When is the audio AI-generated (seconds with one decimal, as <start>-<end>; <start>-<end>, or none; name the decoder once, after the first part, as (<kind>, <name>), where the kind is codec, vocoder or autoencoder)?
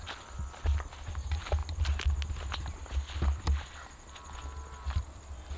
none